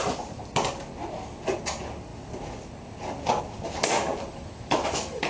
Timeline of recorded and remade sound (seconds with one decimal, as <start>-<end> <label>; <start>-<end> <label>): 0.0-4.3 recorded; 4.3-5.3 remade